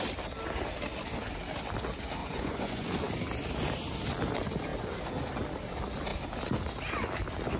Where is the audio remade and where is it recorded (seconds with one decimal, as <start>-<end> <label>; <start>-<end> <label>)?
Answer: 0.0-2.2 recorded; 2.2-2.9 remade; 2.9-7.6 recorded